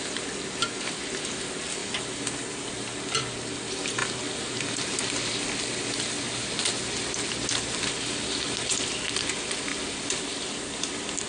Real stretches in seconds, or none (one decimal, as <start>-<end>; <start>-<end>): 0.0-11.3